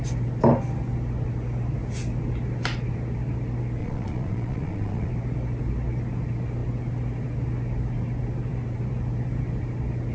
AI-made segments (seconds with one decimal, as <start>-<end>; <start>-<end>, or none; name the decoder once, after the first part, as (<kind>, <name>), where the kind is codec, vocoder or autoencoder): 3.8-5.1 (vocoder, Vocos)